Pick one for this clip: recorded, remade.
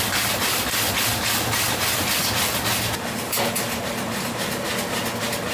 recorded